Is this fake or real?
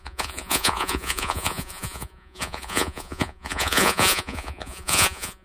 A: fake